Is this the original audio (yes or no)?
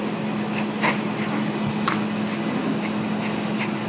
yes